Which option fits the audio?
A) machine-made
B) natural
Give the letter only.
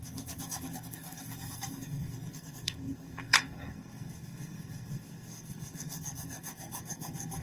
A